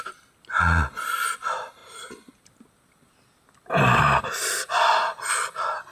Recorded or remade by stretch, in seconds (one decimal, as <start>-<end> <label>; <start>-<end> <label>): 0.0-5.9 recorded